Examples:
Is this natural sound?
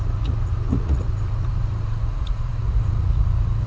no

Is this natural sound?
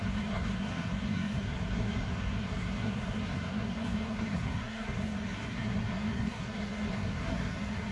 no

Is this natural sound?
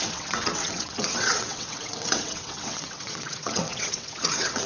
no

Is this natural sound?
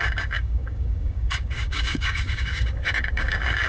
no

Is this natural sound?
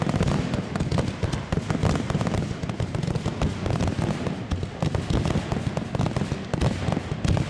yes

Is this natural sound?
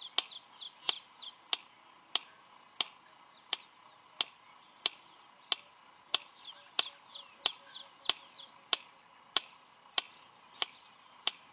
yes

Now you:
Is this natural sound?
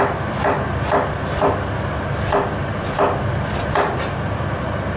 yes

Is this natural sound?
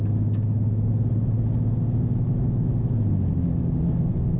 yes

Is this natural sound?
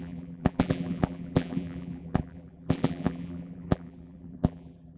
no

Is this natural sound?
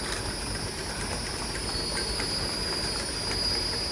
no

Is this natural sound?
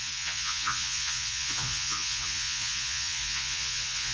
no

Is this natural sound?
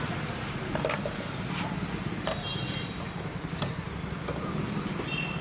yes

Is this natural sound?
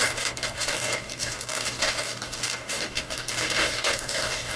no